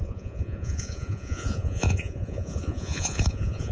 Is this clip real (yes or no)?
no